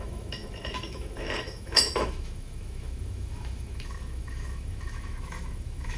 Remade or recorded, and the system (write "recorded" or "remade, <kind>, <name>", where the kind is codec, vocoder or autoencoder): remade, autoencoder, DAC-VAE